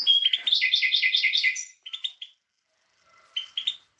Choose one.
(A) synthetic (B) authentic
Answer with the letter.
B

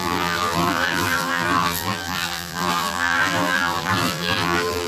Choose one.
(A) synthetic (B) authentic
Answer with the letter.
A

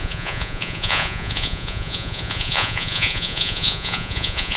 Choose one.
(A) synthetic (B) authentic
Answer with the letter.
A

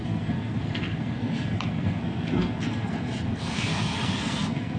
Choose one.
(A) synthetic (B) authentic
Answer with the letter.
A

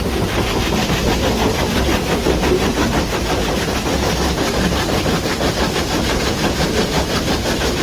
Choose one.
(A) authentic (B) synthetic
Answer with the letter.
A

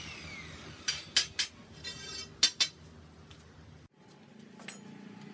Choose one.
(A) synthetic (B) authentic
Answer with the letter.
B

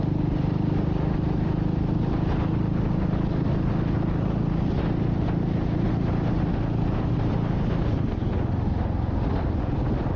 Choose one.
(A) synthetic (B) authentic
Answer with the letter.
B